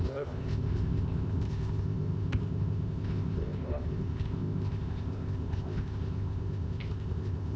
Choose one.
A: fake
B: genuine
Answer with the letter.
A